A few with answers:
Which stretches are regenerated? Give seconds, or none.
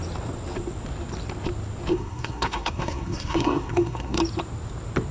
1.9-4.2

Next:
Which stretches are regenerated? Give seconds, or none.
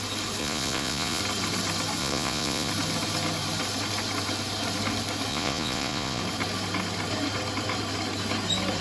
0.4-1.2; 2.0-2.7; 5.3-6.2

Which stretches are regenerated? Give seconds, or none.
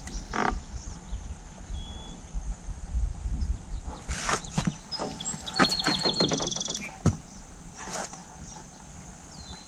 3.1-7.8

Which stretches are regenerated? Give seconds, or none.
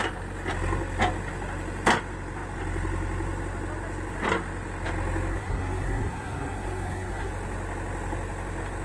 5.3-7.3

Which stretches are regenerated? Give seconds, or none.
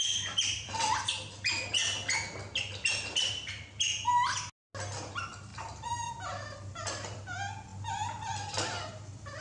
none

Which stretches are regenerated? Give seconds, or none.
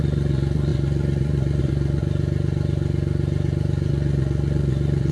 0.0-2.0; 3.9-5.1